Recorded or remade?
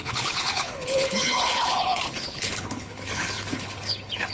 remade